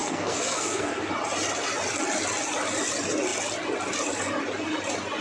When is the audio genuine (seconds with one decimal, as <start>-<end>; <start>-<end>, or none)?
1.1-5.2